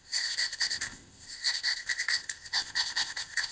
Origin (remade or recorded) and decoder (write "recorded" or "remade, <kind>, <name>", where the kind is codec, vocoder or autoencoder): remade, codec, ZipCodec